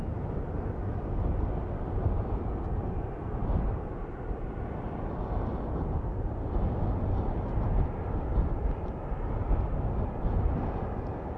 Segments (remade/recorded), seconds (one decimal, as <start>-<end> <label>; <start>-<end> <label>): 0.0-11.4 recorded